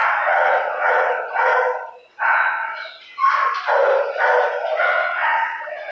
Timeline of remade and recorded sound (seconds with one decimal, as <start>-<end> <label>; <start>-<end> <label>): 0.0-1.5 remade; 1.5-2.1 recorded; 2.1-2.9 remade; 2.9-4.8 recorded; 4.8-5.9 remade